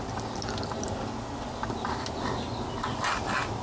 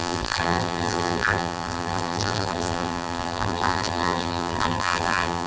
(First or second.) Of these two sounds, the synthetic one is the second